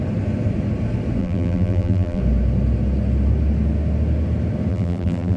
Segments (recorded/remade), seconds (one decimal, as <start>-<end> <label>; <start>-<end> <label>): 0.0-1.2 recorded; 1.2-2.2 remade; 2.2-4.7 recorded; 4.7-5.4 remade